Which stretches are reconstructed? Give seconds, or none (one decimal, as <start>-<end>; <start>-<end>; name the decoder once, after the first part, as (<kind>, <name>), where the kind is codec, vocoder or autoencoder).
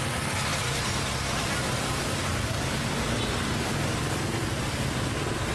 none